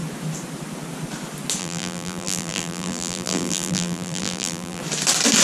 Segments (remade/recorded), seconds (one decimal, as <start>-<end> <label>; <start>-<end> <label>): 0.0-1.6 recorded; 1.6-4.8 remade; 4.8-5.4 recorded